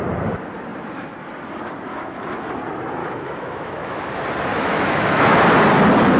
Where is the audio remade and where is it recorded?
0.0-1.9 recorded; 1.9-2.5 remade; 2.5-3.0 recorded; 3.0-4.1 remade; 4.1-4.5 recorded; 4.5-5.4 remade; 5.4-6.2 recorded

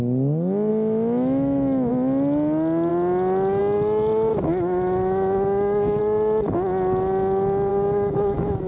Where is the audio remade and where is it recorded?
0.0-0.7 recorded; 0.7-1.9 remade; 1.9-4.3 recorded; 4.3-6.0 remade; 6.0-7.7 recorded; 7.7-8.7 remade

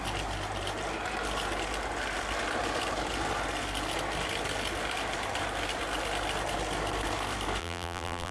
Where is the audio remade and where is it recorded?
0.0-7.6 recorded; 7.6-8.3 remade

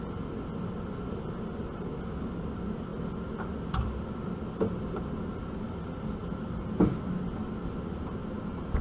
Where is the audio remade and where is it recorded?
0.0-8.8 recorded

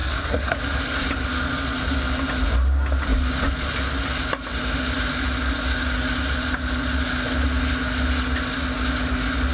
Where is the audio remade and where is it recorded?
0.0-0.6 remade; 0.6-9.5 recorded

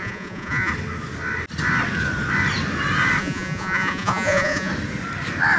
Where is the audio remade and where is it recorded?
0.0-0.7 remade; 0.7-3.2 recorded; 3.2-4.7 remade; 4.7-5.6 recorded